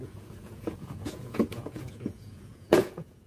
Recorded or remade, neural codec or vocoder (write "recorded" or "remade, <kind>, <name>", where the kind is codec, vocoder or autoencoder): remade, vocoder, Vocos